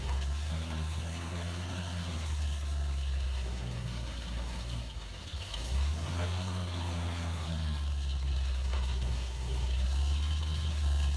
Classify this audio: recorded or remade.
remade